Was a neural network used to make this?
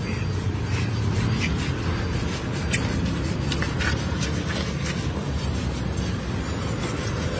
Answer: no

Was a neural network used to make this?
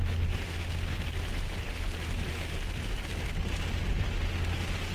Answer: no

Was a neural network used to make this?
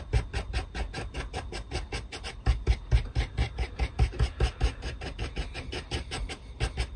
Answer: no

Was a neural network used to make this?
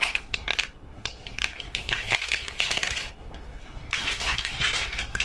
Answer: yes